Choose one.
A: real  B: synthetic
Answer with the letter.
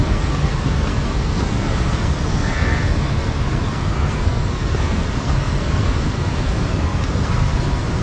B